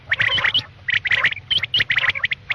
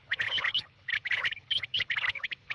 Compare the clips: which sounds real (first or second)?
first